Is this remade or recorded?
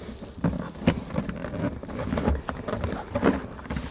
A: recorded